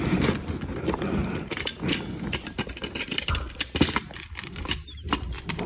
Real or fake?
real